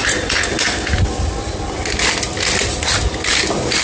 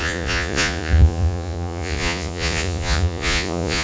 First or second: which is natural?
first